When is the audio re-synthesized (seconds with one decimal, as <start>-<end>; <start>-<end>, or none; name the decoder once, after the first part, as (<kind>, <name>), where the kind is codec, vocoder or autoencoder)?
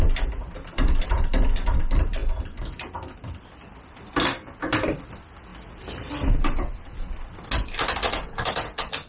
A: none